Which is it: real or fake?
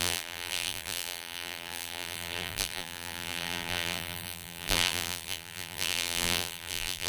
fake